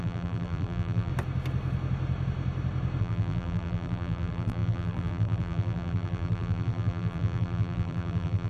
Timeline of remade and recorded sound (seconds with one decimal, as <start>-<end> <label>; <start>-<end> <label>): 0.0-1.1 remade; 1.1-3.0 recorded; 3.0-8.5 remade

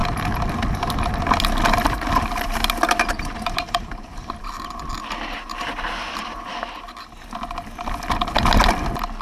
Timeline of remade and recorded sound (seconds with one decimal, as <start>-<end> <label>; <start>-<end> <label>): 0.0-3.1 recorded; 3.1-4.9 remade; 4.9-9.2 recorded

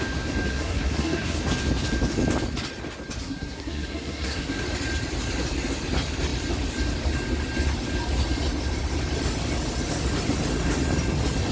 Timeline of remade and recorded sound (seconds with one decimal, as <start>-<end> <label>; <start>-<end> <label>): 0.0-0.5 recorded; 0.5-1.4 remade; 1.4-3.2 recorded; 3.2-4.6 remade; 4.6-11.5 recorded

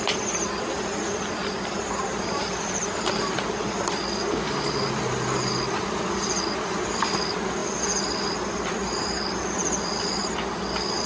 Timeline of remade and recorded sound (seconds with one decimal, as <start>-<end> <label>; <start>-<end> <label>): 0.0-11.1 recorded

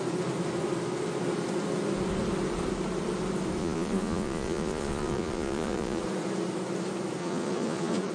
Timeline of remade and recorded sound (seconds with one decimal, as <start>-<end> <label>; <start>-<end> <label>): 0.0-3.6 recorded; 3.6-6.0 remade; 6.0-7.2 recorded; 7.2-8.1 remade